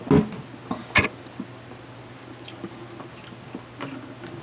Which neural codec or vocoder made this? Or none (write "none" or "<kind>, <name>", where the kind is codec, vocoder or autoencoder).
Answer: none